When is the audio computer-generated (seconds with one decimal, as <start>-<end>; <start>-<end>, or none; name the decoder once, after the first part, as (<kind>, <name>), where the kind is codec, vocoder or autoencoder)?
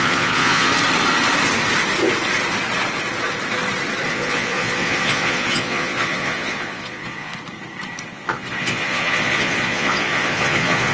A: 0.0-0.7 (vocoder, Vocos); 4.1-7.3; 8.1-10.9